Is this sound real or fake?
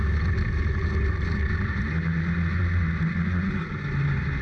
real